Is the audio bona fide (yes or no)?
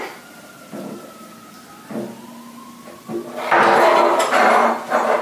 yes